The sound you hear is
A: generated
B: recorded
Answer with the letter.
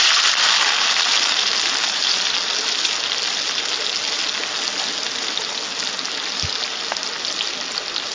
B